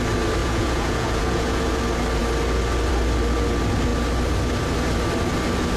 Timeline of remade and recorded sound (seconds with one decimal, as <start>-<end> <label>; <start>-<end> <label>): 0.0-0.4 recorded; 0.4-1.8 remade; 1.8-5.8 recorded